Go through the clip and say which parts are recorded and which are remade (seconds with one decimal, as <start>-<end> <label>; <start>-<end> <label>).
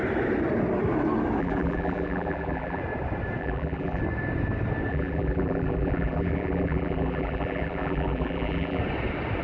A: 0.0-1.4 recorded; 1.4-2.8 remade; 2.8-3.4 recorded; 3.4-4.0 remade; 4.0-4.9 recorded; 4.9-8.8 remade; 8.8-9.4 recorded